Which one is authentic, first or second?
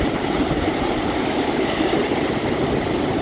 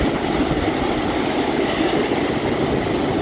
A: second